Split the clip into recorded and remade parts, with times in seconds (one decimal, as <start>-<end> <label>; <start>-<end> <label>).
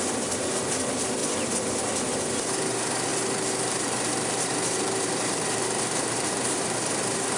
0.0-3.1 recorded; 3.1-7.4 remade